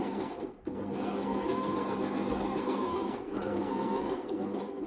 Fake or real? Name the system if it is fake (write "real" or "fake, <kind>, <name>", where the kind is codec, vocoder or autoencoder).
fake, codec, SNAC